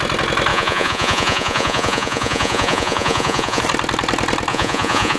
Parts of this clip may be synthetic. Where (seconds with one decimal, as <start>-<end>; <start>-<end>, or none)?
0.5-3.6; 4.5-5.2